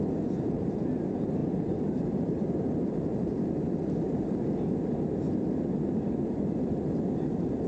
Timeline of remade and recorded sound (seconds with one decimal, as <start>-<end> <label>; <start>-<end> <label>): 0.0-1.4 recorded; 1.4-4.4 remade; 4.4-7.7 recorded